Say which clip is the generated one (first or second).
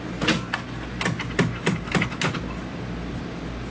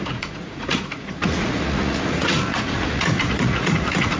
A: second